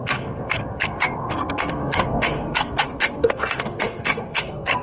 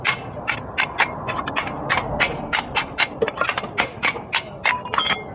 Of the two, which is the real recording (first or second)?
second